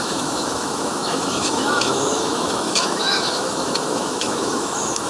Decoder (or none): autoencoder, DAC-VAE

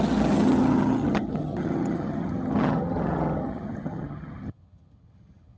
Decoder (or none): vocoder, HiFi-GAN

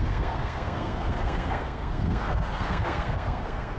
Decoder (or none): codec, SNAC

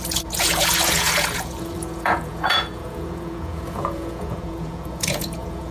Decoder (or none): vocoder, Vocos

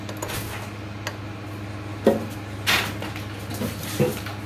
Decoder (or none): none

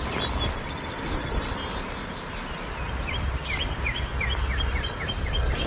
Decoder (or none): none